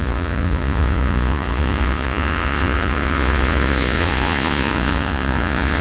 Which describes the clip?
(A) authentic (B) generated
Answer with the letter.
B